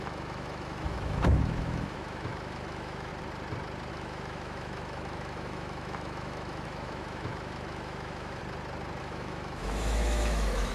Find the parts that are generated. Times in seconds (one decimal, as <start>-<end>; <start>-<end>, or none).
0.0-3.1; 3.9-8.4; 9.0-10.7